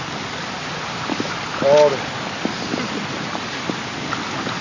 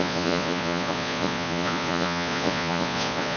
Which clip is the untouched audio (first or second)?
first